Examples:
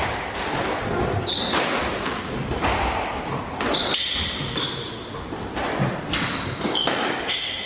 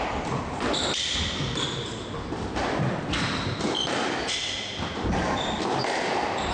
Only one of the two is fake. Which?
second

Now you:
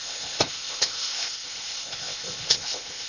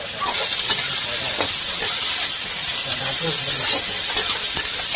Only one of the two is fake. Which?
first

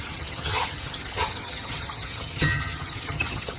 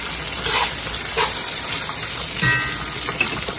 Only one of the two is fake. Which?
first